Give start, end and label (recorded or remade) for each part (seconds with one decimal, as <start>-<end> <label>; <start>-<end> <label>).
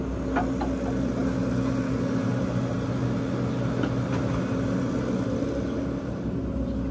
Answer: 0.0-6.9 recorded